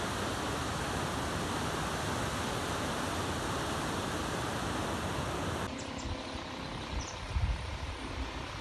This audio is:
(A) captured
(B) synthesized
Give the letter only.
A